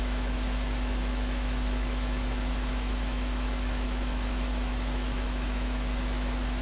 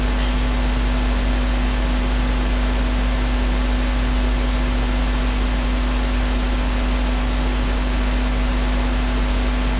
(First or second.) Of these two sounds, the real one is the second